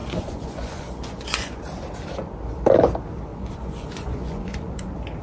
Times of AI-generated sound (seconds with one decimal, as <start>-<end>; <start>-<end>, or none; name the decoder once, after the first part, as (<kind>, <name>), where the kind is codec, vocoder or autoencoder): 0.0-1.6 (vocoder, Vocos); 3.3-4.7